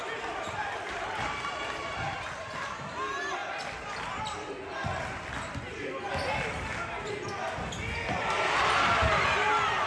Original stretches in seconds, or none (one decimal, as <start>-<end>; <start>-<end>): 0.0-9.9